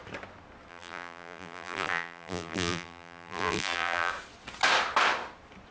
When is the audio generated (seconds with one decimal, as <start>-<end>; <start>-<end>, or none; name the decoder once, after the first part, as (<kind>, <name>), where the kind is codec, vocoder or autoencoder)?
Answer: 0.7-4.1 (vocoder, BigVGAN v2)